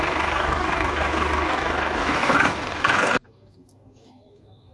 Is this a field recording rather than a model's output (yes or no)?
no